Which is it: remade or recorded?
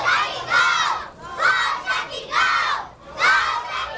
recorded